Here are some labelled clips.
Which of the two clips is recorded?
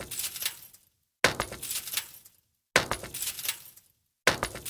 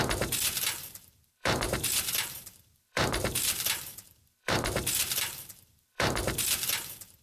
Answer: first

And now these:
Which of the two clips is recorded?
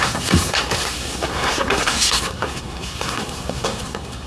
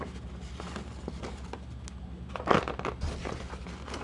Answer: second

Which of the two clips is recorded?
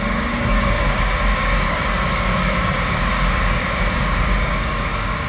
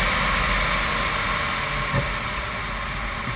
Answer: second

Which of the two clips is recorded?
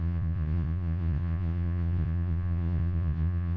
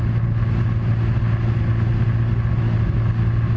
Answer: second